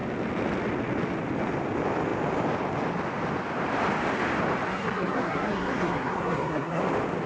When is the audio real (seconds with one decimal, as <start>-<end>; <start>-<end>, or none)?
0.0-4.7; 6.8-7.3